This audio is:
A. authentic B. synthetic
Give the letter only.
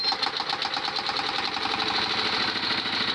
A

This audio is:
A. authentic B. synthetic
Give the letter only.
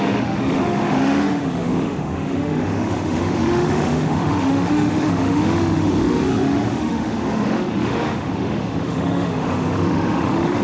B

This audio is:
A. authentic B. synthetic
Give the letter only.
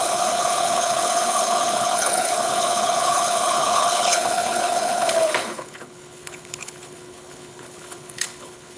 B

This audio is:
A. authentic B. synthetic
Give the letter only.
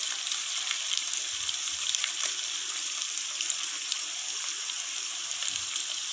B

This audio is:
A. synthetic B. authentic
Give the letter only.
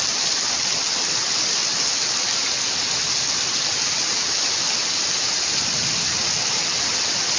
B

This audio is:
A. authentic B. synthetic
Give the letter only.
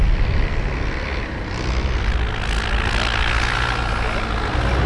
A